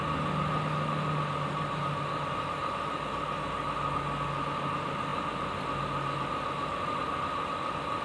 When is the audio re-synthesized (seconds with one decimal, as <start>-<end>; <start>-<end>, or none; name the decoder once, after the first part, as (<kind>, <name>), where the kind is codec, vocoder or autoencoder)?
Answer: none